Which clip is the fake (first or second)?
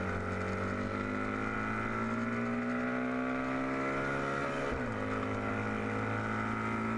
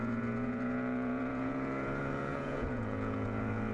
second